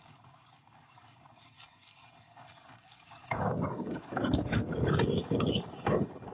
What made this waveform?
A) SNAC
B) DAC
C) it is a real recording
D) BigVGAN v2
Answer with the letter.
B